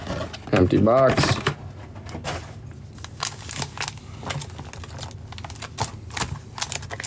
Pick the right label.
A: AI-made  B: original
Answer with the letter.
B